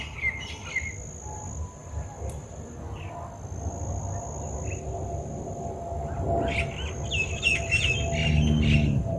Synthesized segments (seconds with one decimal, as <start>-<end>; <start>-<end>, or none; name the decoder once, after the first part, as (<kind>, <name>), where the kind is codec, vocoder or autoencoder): none